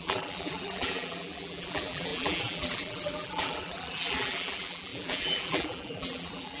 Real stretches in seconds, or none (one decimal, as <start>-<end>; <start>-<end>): none